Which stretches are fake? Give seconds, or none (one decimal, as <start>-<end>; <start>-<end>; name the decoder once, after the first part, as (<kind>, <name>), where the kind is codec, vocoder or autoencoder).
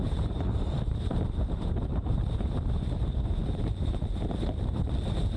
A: 0.0-2.3 (vocoder, BigVGAN v2); 3.4-4.0